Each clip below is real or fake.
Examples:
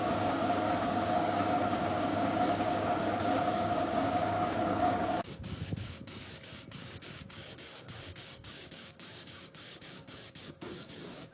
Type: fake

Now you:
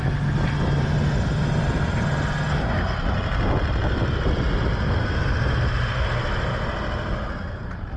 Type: real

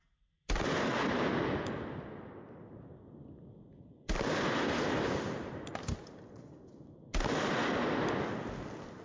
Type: real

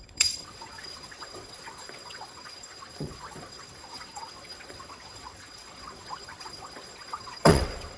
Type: fake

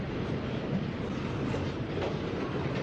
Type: real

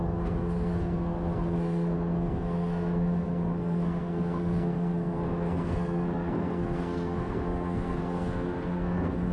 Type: fake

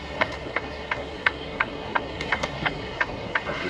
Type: fake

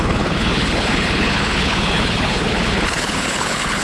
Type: fake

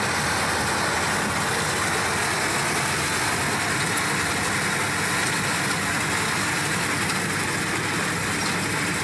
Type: real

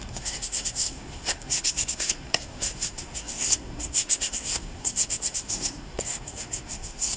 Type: fake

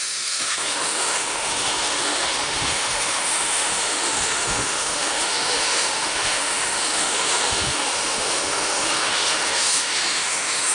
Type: fake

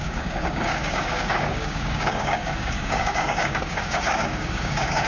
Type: fake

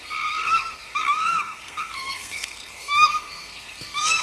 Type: fake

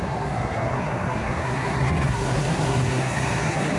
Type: fake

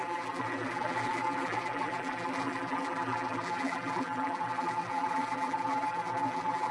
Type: fake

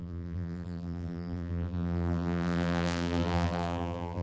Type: fake